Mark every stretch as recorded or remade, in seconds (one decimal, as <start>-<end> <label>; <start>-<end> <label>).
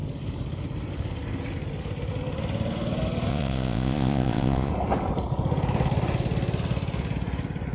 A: 0.0-3.3 recorded; 3.3-4.7 remade; 4.7-7.7 recorded